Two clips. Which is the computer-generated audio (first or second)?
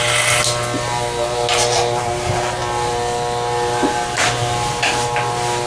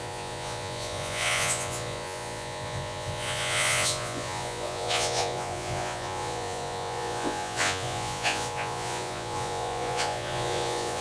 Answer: second